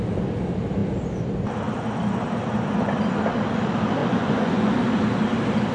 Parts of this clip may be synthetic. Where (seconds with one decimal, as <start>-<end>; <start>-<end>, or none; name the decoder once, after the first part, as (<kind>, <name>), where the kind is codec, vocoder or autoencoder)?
4.0-4.7 (vocoder, Vocos)